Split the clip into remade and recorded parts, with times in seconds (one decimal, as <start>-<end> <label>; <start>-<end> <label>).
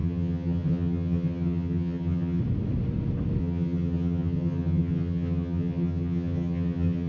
0.0-2.4 remade; 2.4-3.4 recorded; 3.4-7.1 remade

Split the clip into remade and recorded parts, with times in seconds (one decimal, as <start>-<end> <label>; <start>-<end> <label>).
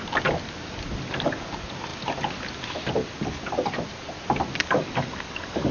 0.0-4.5 recorded; 4.5-5.7 remade